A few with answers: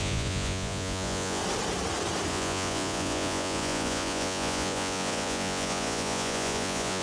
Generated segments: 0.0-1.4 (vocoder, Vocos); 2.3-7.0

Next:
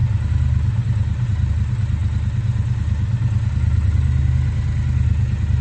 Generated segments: none

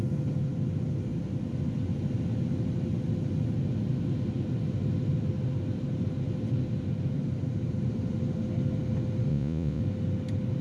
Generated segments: 9.3-9.8 (vocoder, Vocos)